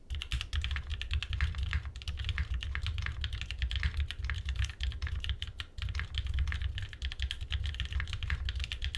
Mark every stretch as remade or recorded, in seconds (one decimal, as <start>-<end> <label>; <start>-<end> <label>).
0.0-9.0 recorded